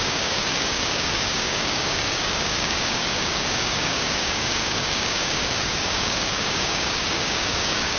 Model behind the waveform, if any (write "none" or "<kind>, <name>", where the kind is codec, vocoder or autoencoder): codec, DAC